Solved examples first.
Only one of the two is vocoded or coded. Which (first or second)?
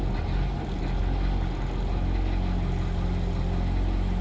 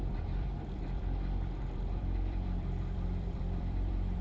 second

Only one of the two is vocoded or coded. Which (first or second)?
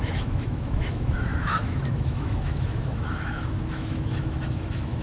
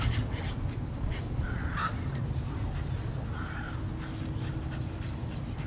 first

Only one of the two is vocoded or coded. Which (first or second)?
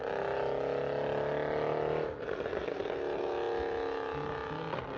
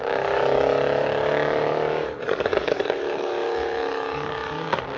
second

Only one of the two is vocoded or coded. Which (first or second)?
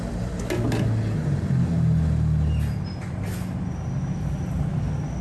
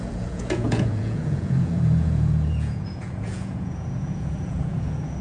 second